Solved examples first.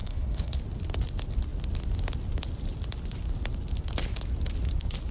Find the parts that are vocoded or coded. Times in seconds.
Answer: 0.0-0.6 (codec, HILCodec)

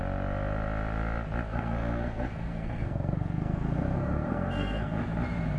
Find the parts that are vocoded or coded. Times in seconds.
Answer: 1.5-4.9 (codec, SNAC)

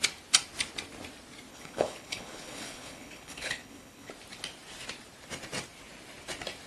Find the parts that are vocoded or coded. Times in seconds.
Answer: 1.5-4.1 (codec, HILCodec)

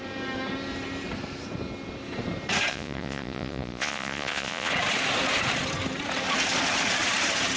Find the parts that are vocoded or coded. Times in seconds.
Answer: 2.7-4.7 (vocoder, Vocos)

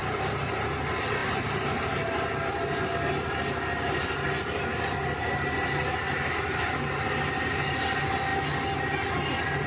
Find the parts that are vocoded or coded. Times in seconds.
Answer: none

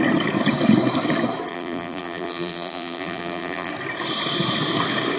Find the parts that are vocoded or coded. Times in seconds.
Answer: 1.5-3.7 (vocoder, BigVGAN v2)

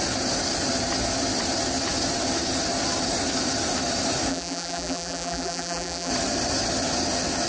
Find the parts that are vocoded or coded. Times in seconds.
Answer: 4.3-6.1 (vocoder, BigVGAN v2)

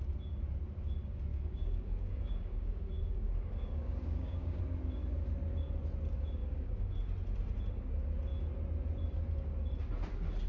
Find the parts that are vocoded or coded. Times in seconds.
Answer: 1.3-4.6 (codec, DAC); 6.4-6.9